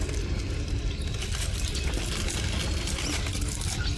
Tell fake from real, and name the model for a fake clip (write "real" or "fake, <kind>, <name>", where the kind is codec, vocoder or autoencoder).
real